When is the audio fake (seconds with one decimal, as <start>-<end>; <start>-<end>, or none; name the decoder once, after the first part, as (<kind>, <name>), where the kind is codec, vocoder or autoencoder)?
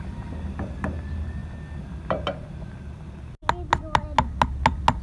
none